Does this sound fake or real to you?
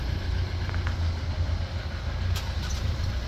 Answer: real